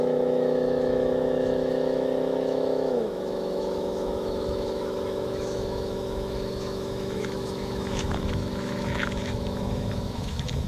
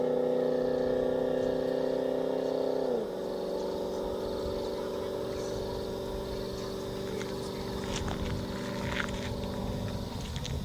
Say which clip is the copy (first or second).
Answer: first